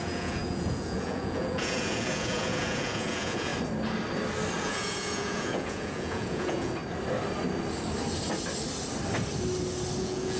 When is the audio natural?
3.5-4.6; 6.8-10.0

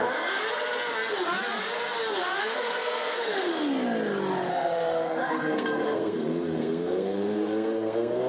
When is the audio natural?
0.4-2.4; 3.5-4.5

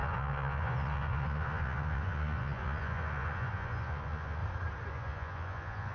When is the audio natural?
4.4-4.9